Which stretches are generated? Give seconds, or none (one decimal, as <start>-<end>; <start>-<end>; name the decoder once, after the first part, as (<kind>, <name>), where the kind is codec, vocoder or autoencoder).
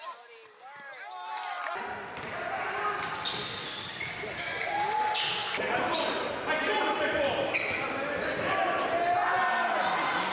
none